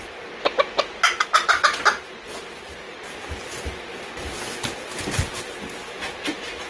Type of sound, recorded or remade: recorded